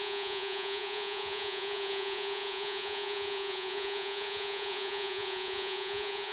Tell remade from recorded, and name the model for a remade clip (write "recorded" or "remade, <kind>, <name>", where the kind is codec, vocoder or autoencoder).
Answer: remade, vocoder, Vocos